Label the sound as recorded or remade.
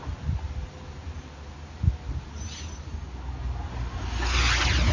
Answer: recorded